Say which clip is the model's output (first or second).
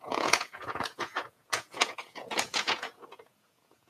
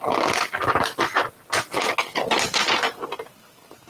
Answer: first